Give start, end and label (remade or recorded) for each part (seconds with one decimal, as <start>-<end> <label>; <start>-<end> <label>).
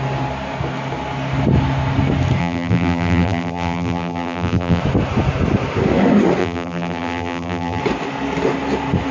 0.0-2.4 recorded; 2.4-4.8 remade; 4.8-6.4 recorded; 6.4-7.8 remade; 7.8-9.1 recorded